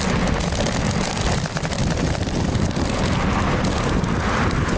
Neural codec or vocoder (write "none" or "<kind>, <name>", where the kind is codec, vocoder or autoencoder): none